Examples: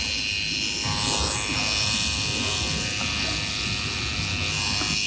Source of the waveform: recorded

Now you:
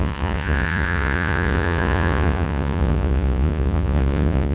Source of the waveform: remade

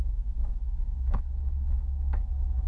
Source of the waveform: remade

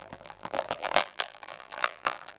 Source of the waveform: remade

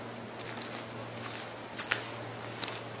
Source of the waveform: recorded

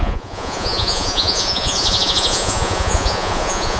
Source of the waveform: remade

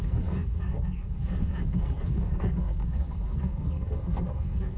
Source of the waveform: remade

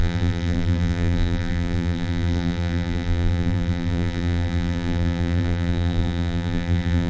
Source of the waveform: remade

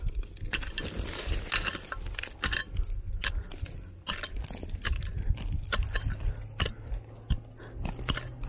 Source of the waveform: recorded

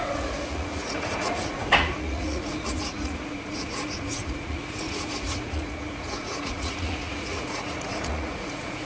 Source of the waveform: remade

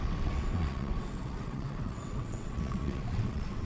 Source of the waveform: remade